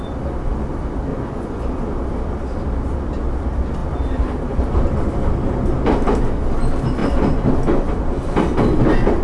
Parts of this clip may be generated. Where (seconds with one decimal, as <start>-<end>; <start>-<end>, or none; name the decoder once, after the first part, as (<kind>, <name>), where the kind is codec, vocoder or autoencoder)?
1.1-1.6 (vocoder, Vocos)